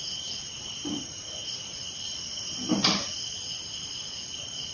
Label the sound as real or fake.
real